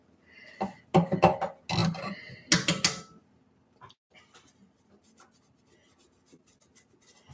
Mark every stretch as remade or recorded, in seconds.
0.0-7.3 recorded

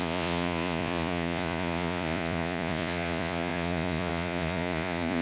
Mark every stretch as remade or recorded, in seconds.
0.0-5.2 remade

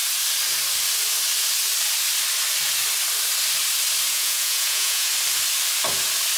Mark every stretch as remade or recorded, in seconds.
0.0-4.1 recorded; 4.1-5.1 remade; 5.1-6.4 recorded

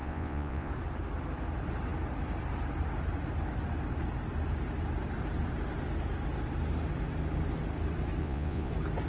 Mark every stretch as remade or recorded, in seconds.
0.0-0.7 remade; 0.7-8.2 recorded; 8.2-8.7 remade; 8.7-9.1 recorded

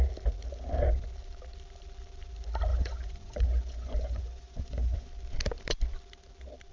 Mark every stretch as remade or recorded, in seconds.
0.0-2.7 recorded; 2.7-5.1 remade; 5.1-6.7 recorded